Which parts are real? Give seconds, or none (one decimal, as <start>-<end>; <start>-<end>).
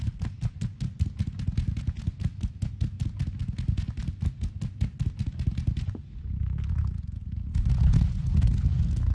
0.0-9.1